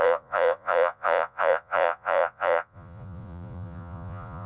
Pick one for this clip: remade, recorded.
remade